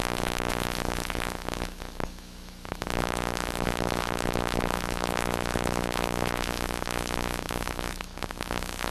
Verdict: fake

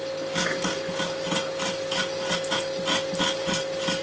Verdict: real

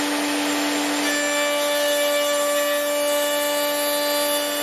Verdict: real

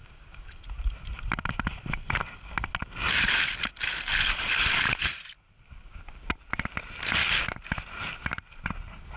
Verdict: real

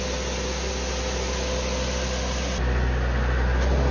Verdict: real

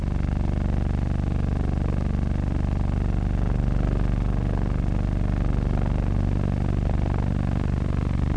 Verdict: real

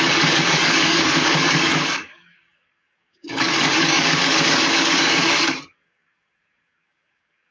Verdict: fake